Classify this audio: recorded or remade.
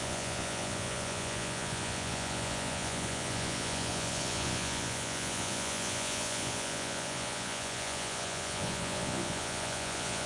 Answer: remade